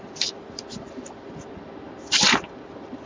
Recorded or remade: recorded